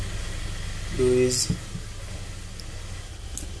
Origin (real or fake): real